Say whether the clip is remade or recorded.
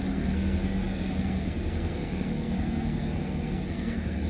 remade